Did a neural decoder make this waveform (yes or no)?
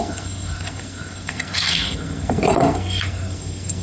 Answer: yes